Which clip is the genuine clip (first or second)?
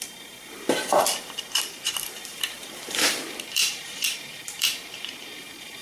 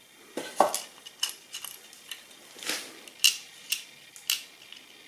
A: second